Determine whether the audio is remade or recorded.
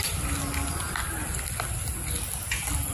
recorded